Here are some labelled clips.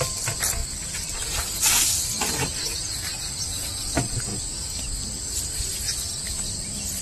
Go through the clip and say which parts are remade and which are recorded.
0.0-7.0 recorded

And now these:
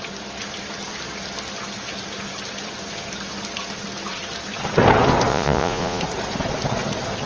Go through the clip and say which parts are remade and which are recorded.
0.0-5.3 recorded; 5.3-6.0 remade; 6.0-7.3 recorded

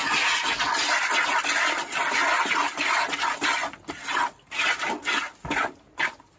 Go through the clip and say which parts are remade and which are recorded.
0.0-6.4 recorded

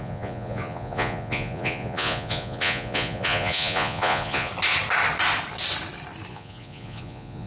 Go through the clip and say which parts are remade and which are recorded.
0.0-4.5 remade; 4.5-6.3 recorded; 6.3-7.5 remade

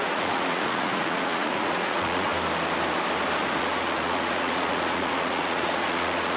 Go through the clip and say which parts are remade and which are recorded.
0.0-2.3 remade; 2.3-3.6 recorded; 3.6-6.4 remade

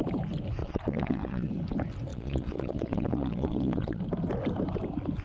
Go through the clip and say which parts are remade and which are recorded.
0.0-0.6 recorded; 0.6-1.5 remade; 1.5-2.1 recorded; 2.1-4.0 remade; 4.0-5.2 recorded

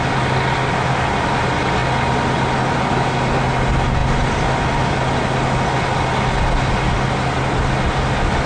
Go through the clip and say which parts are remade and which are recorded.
0.0-8.5 recorded

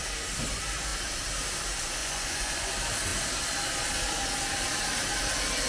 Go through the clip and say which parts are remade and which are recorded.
0.0-2.0 recorded; 2.0-2.7 remade; 2.7-5.7 recorded